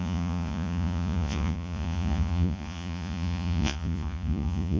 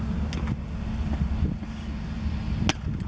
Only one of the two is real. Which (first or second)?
second